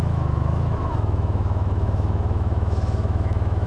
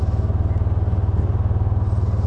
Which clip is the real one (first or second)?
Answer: second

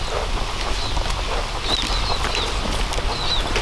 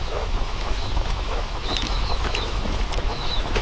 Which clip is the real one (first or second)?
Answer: first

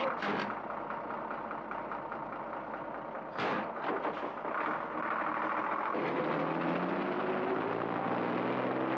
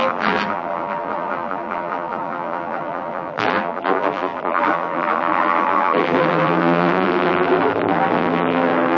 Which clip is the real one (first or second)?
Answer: first